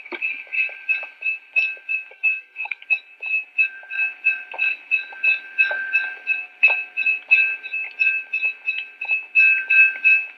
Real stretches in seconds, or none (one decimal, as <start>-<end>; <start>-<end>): 0.0-2.1; 2.8-10.4